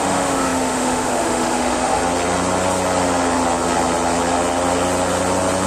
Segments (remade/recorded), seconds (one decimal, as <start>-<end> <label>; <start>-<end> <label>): 0.0-2.0 remade; 2.0-5.7 recorded